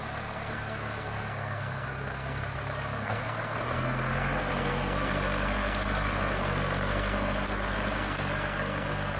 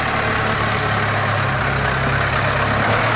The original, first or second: second